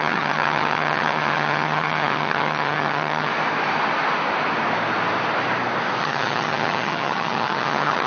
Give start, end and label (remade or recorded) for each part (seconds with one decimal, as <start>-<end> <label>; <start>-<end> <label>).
0.0-3.3 remade; 3.3-6.0 recorded; 6.0-8.1 remade